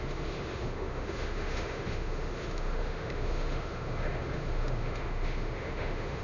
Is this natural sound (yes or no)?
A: no